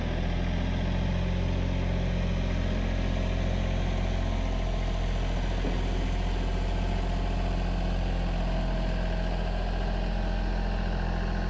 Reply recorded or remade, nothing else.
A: recorded